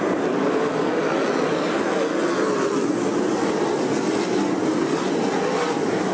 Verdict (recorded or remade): recorded